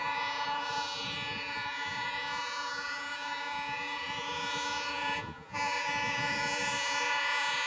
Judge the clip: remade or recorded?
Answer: remade